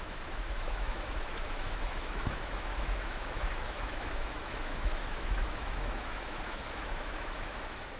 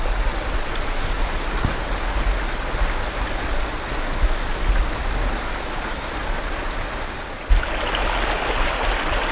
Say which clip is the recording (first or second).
second